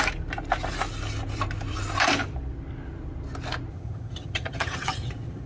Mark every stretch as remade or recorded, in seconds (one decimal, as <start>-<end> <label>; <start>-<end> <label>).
0.0-3.7 recorded; 3.7-5.5 remade